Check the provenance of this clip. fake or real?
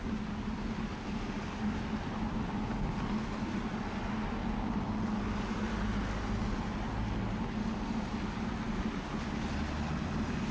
real